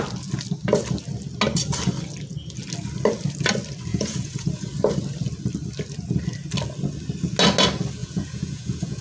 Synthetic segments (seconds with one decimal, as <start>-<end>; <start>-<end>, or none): 3.9-4.5; 8.0-9.0